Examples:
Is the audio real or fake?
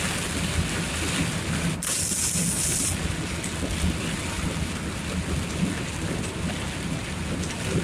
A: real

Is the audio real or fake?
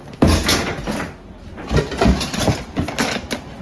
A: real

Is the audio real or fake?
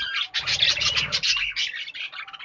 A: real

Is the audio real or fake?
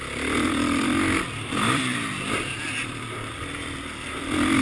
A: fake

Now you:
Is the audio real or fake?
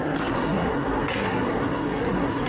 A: fake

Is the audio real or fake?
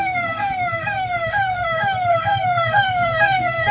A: fake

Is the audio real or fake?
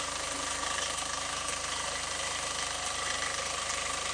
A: fake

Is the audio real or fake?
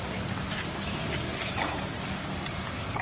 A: real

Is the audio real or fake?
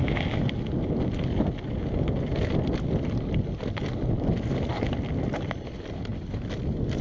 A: real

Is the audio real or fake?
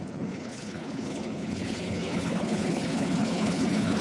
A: fake